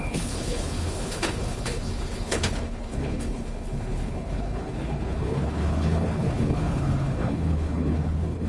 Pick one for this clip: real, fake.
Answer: fake